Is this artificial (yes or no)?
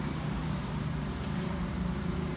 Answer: yes